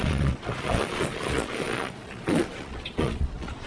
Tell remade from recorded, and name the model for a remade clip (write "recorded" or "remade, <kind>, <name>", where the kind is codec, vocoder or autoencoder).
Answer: remade, vocoder, Vocos